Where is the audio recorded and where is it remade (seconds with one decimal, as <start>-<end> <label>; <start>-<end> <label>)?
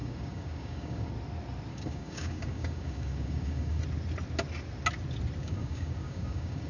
0.0-1.1 remade; 1.1-1.7 recorded; 1.7-3.8 remade; 3.8-5.4 recorded; 5.4-6.7 remade